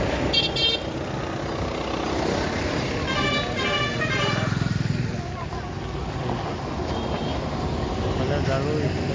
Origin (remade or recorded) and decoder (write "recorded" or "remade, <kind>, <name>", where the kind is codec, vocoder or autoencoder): recorded